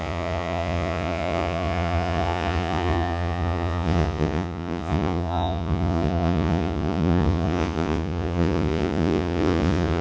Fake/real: fake